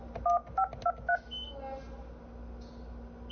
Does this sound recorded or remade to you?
recorded